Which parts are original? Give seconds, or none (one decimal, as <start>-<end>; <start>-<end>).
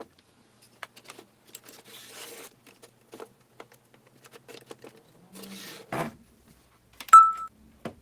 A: 0.0-8.0